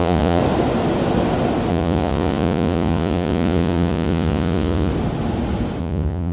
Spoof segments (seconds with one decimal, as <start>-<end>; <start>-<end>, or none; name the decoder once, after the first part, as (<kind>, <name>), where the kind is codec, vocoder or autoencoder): 0.0-0.4 (vocoder, Vocos); 1.7-4.9; 5.8-6.3

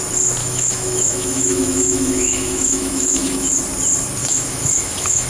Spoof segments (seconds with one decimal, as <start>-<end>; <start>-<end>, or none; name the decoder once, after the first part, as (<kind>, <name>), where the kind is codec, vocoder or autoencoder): 0.4-3.6 (autoencoder, DAC-VAE); 4.2-5.3

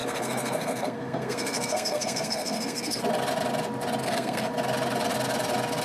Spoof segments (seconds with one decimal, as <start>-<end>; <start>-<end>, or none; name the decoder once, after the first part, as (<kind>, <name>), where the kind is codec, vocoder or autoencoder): 0.0-3.0 (codec, SNAC); 4.0-4.5